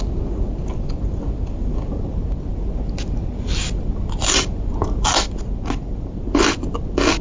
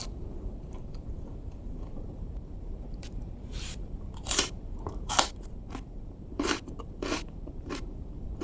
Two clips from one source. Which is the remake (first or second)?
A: second